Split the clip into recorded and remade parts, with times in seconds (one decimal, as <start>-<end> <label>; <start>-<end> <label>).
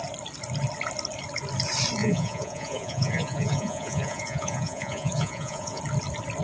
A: 0.0-2.0 recorded; 2.0-5.8 remade; 5.8-6.4 recorded